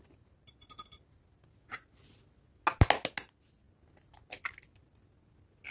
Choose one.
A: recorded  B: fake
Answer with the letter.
A